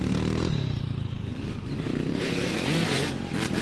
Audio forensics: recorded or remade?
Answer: remade